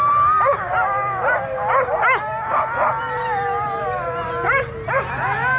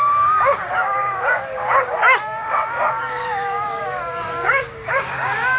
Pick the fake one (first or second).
second